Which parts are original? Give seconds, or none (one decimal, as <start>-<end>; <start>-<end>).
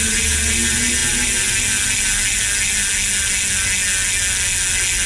0.0-5.1